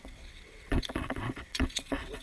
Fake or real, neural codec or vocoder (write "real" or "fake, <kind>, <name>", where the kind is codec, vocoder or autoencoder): fake, vocoder, WaveNeXt